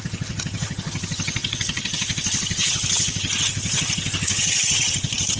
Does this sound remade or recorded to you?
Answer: remade